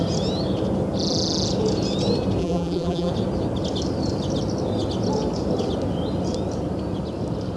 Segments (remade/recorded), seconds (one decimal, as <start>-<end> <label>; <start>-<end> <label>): 0.0-2.4 recorded; 2.4-3.1 remade; 3.1-7.6 recorded